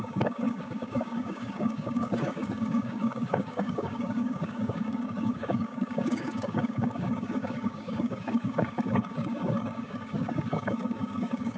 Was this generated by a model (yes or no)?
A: yes